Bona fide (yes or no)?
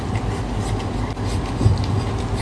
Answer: yes